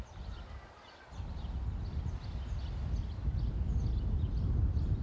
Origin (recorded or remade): recorded